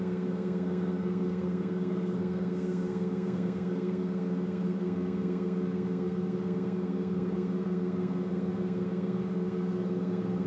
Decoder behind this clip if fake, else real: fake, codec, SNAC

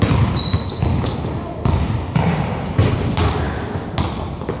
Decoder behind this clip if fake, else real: real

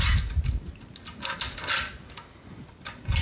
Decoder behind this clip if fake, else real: real